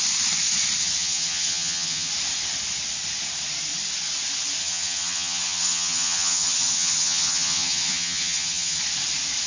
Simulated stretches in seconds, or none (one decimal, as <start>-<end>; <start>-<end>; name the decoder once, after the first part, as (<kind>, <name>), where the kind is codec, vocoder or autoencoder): 0.8-2.1 (vocoder, HiFi-GAN); 4.6-8.8